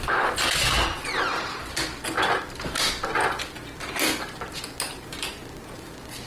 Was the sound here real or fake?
real